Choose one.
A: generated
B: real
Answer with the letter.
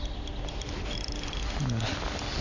B